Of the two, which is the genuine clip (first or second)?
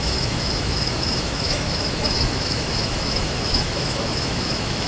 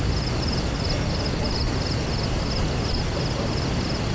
second